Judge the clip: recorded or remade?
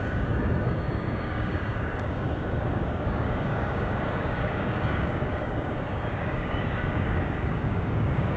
remade